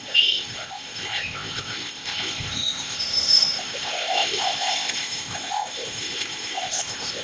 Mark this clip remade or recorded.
remade